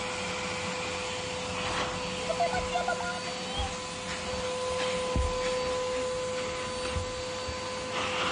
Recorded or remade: recorded